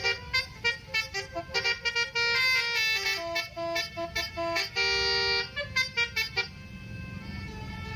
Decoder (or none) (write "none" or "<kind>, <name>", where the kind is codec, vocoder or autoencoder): none